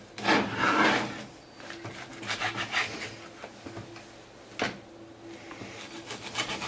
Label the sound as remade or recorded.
recorded